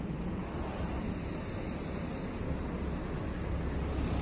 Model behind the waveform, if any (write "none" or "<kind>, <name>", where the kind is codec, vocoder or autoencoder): none